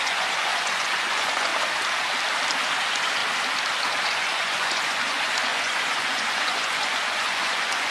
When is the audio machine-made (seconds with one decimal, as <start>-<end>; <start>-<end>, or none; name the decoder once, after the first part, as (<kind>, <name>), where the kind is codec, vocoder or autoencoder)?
0.0-1.5 (vocoder, Vocos); 2.8-3.2; 4.0-7.9